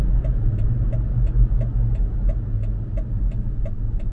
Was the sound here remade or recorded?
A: recorded